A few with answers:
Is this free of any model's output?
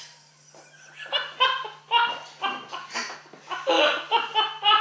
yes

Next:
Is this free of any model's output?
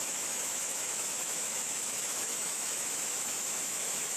no